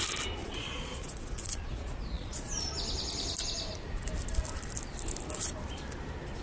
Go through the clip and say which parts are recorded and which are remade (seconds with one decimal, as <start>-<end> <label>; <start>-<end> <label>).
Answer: 0.0-0.4 recorded; 0.4-2.5 remade; 2.5-6.4 recorded